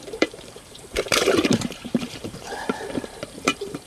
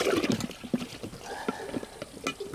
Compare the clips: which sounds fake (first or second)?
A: first